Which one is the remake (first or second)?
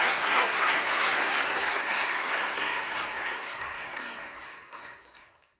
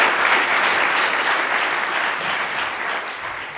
first